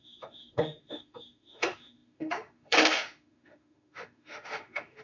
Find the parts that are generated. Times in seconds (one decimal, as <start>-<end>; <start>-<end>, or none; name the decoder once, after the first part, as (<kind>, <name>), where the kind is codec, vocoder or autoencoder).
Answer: 0.0-5.0 (autoencoder, DAC-VAE)